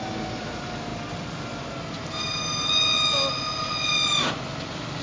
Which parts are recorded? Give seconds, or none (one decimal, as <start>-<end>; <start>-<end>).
0.0-5.0

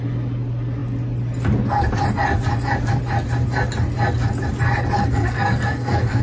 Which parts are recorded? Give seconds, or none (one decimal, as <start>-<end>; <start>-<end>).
0.0-5.0